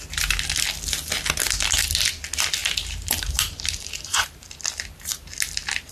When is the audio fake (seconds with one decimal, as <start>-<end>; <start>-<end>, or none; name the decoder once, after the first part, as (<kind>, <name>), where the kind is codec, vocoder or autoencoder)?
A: 2.6-4.5 (vocoder, BigVGAN v2)